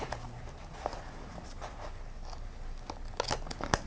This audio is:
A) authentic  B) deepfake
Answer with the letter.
A